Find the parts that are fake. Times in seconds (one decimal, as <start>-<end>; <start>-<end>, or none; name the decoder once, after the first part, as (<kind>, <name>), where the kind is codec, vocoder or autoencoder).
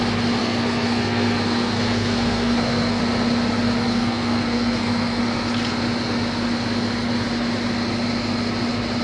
0.4-3.0 (codec, SNAC); 3.9-5.2